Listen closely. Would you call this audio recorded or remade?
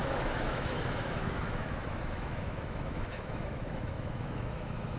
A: remade